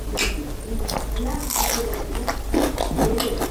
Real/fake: real